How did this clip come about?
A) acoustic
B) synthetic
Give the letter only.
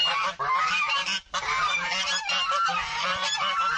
A